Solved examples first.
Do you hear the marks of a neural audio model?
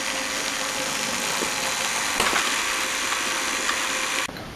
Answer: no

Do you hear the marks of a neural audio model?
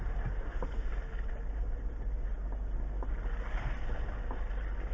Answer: no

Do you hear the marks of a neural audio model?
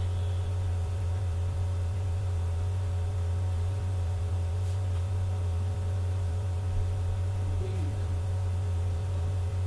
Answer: yes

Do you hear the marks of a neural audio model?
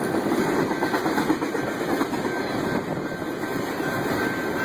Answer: no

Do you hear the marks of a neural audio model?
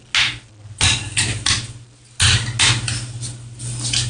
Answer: no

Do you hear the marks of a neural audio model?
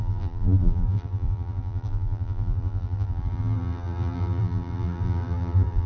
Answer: yes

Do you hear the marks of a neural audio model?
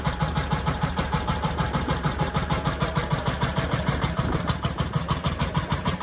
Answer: yes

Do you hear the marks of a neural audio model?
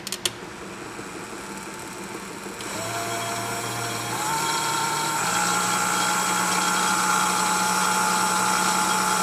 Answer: no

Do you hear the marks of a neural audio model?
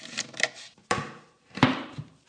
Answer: yes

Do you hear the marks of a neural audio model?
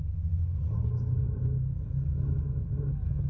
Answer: no